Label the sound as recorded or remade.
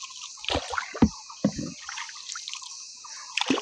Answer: recorded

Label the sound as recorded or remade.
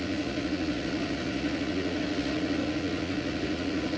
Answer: remade